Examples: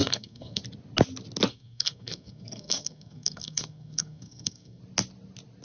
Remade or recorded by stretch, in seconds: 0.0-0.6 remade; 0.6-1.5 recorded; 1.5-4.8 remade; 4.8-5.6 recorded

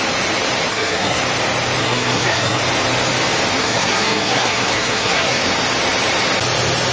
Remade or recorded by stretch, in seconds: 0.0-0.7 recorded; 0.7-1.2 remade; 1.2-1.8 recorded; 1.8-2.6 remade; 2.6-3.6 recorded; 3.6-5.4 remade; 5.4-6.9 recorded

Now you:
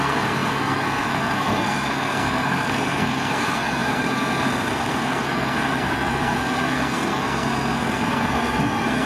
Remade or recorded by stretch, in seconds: 0.0-9.1 remade

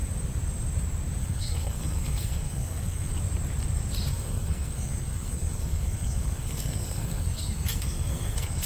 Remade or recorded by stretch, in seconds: 0.0-1.2 recorded; 1.2-3.1 remade; 3.1-4.1 recorded; 4.1-8.7 remade

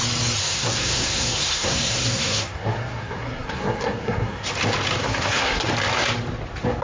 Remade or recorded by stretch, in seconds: 0.0-0.4 recorded; 0.4-4.5 remade; 4.5-5.0 recorded; 5.0-5.7 remade; 5.7-6.8 recorded

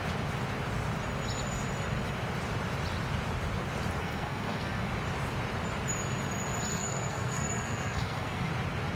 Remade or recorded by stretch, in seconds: 0.0-4.0 recorded; 4.0-4.9 remade; 4.9-6.7 recorded; 6.7-8.5 remade; 8.5-9.0 recorded